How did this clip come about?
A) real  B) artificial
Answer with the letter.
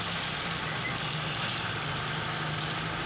A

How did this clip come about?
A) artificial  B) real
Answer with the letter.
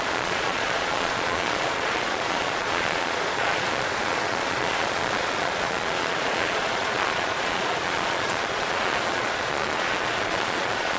A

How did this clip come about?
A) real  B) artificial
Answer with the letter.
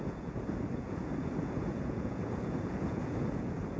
B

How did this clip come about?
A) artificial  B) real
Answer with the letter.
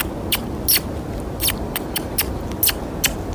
B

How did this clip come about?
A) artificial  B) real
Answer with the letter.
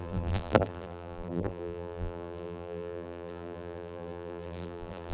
A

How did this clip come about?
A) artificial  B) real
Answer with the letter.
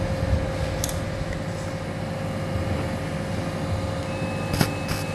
B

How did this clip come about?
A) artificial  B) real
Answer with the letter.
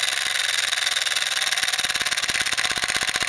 B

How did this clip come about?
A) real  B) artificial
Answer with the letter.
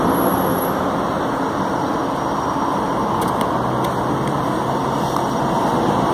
A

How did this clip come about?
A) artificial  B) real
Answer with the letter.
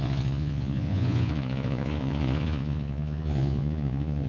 A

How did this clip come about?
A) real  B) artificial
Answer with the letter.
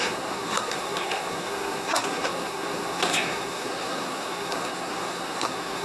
B